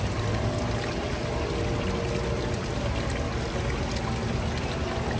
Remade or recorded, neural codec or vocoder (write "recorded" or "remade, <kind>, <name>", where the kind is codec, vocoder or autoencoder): recorded